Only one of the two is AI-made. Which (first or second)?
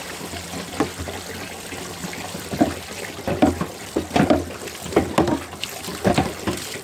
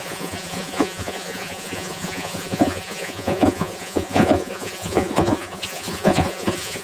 second